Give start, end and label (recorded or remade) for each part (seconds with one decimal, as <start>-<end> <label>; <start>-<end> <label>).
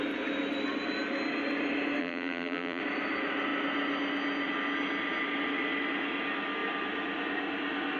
0.0-2.0 recorded; 2.0-2.8 remade; 2.8-8.0 recorded